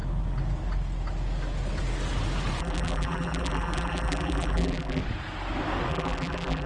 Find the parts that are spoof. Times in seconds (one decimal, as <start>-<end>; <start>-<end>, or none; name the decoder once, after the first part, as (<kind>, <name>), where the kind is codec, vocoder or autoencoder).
2.6-5.0 (vocoder, BigVGAN v2); 5.9-6.7

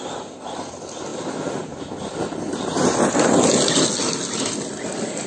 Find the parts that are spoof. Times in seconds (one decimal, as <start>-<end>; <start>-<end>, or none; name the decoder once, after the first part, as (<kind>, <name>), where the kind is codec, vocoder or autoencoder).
none

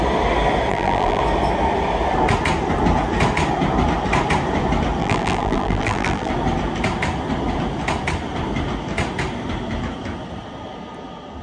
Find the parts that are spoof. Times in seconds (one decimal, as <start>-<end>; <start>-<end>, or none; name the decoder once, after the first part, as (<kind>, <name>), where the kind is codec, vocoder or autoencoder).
0.7-1.2 (vocoder, BigVGAN v2); 5.0-6.3

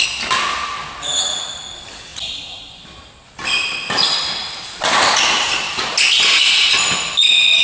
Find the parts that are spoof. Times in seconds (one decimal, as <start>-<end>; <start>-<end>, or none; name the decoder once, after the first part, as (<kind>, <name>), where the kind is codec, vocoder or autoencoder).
none

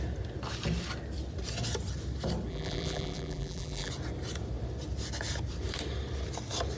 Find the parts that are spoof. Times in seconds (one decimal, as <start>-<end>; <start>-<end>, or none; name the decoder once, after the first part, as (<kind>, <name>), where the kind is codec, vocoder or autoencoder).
2.5-3.9 (vocoder, BigVGAN v2)

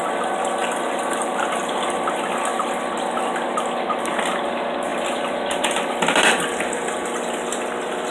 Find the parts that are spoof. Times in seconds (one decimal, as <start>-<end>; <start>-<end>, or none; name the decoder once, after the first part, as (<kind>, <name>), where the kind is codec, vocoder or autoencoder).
0.6-1.8 (vocoder, BigVGAN v2)

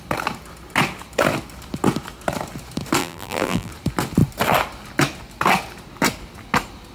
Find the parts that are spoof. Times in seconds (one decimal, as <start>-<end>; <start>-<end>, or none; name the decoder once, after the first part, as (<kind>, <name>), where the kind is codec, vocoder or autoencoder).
3.0-3.7 (vocoder, BigVGAN v2)

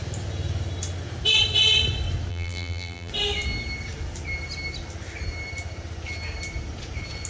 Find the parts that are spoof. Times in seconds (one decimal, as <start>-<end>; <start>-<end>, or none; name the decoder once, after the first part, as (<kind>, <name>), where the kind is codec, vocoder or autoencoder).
2.3-3.1 (vocoder, BigVGAN v2)